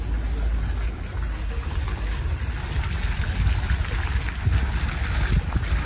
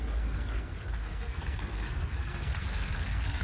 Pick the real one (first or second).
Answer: first